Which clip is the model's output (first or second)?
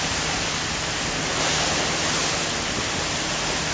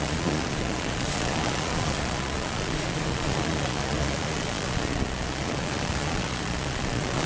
second